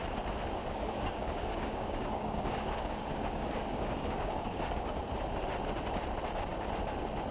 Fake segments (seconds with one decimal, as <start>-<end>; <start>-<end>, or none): 0.6-5.0